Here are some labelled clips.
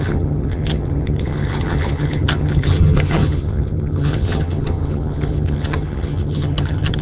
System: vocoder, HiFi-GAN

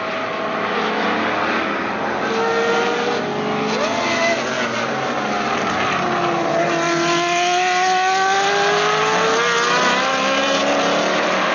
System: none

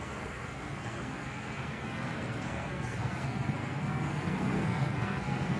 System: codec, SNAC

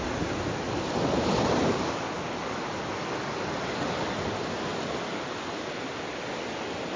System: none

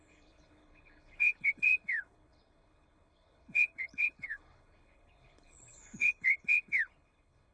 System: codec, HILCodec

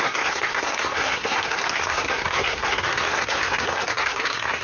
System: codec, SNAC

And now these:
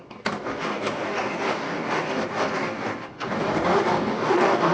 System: codec, DAC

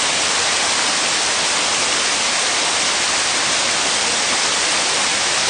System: none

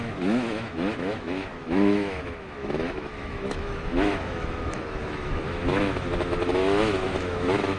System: autoencoder, DAC-VAE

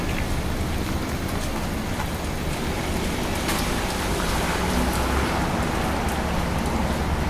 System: none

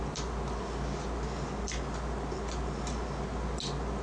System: none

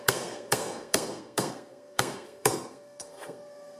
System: codec, SNAC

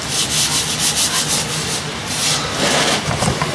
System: none